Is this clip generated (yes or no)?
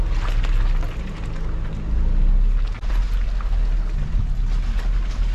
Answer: no